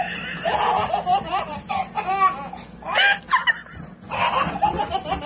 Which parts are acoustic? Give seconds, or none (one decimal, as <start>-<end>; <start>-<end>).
0.0-1.1; 1.7-5.3